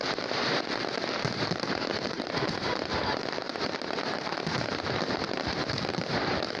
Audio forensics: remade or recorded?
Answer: remade